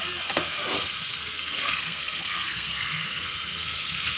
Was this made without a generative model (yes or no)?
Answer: no